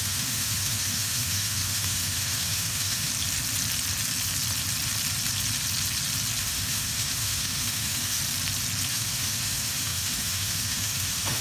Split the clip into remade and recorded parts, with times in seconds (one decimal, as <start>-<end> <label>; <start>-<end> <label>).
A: 0.0-3.1 remade; 3.1-6.4 recorded; 6.4-8.2 remade; 8.2-8.9 recorded; 8.9-11.4 remade